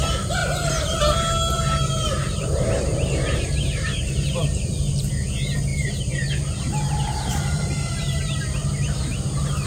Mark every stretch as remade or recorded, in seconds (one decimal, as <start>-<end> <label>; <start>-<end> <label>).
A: 0.0-0.4 recorded; 0.4-1.6 remade; 1.6-2.3 recorded; 2.3-5.1 remade; 5.1-5.7 recorded; 5.7-8.4 remade; 8.4-9.7 recorded